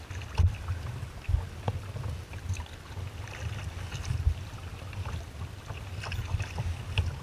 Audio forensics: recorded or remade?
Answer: recorded